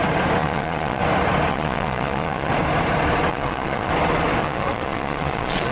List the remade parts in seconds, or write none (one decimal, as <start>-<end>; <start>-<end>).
0.4-1.0; 1.5-2.5; 3.3-3.9; 4.4-5.7